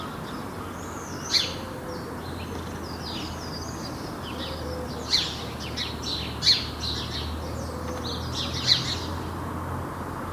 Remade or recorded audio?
recorded